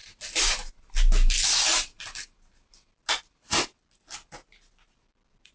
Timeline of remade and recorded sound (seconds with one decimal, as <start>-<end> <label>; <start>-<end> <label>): 0.0-5.5 recorded